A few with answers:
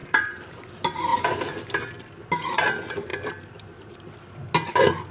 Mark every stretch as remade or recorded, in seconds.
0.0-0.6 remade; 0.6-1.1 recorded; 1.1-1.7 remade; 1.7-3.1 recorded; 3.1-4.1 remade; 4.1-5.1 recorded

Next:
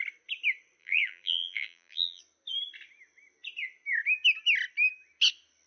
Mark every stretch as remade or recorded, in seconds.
0.0-0.8 recorded; 0.8-2.2 remade; 2.2-5.7 recorded

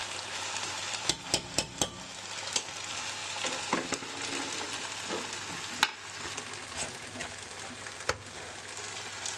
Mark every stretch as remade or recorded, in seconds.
0.0-2.0 remade; 2.0-7.2 recorded; 7.2-7.8 remade; 7.8-9.4 recorded

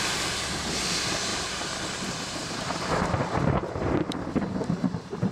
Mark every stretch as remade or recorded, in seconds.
0.0-1.3 recorded; 1.3-1.8 remade; 1.8-3.6 recorded; 3.6-4.7 remade; 4.7-5.3 recorded

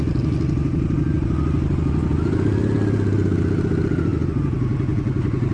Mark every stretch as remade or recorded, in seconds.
0.0-5.5 recorded

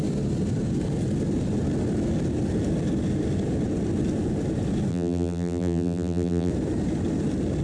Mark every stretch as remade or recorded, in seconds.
0.0-4.9 recorded; 4.9-6.5 remade; 6.5-7.6 recorded

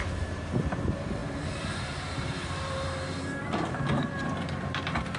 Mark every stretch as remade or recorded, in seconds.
0.0-5.2 remade

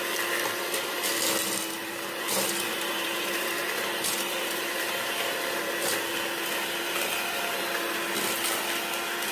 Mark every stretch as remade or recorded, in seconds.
0.0-1.8 recorded; 1.8-5.9 remade; 5.9-9.3 recorded